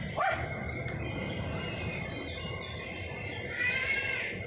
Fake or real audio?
fake